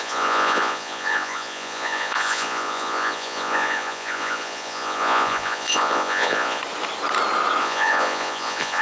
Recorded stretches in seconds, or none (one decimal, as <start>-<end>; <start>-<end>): 6.6-7.6